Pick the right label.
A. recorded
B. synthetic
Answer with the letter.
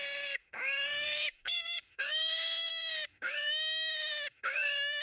B